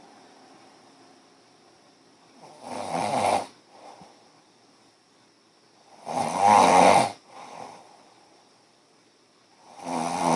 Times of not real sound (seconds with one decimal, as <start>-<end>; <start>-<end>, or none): 0.0-9.5